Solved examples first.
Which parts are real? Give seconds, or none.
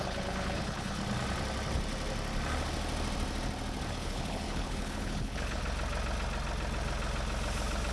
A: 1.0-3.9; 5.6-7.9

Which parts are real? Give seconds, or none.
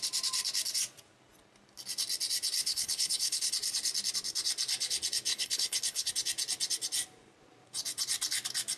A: 0.0-2.6; 3.5-5.3; 6.1-8.8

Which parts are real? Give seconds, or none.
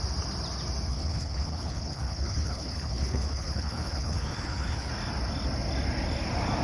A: 0.0-0.9; 4.9-6.6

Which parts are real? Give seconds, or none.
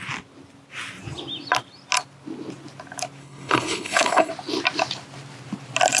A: 0.0-3.2; 4.3-6.0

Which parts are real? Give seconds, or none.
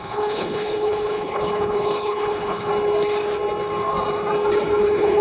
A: 2.7-4.8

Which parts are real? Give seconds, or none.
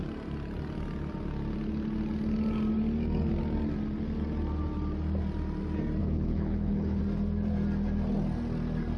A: 0.0-6.0; 7.0-9.0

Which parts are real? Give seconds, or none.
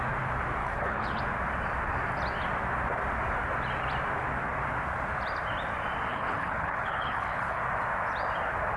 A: 0.0-0.6; 1.2-6.1; 7.6-8.8